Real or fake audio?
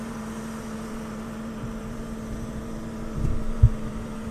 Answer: fake